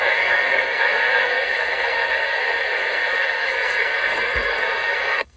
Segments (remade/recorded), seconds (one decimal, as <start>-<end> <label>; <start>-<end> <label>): 0.0-5.4 remade